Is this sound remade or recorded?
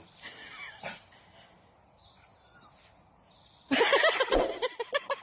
recorded